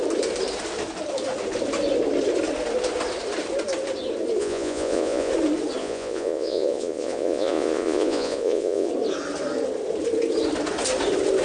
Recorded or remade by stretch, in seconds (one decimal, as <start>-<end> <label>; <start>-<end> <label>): 0.0-4.4 recorded; 4.4-5.3 remade; 5.3-5.8 recorded; 5.8-8.9 remade; 8.9-11.4 recorded